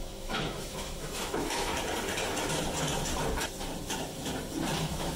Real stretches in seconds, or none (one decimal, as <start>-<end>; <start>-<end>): 1.7-4.8